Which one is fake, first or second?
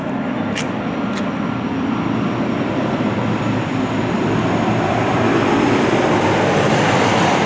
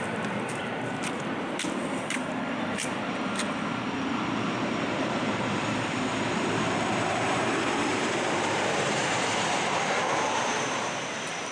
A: second